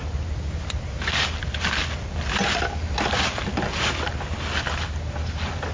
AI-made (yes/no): no